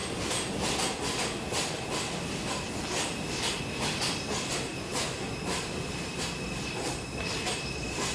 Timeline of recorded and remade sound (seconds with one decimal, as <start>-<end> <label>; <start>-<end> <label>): 0.0-1.7 recorded; 1.7-4.7 remade; 4.7-7.5 recorded; 7.5-8.1 remade